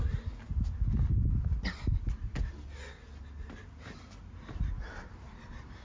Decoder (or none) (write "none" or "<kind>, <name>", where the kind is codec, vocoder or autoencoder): none